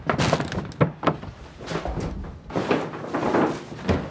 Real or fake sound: real